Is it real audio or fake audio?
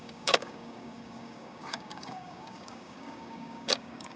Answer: fake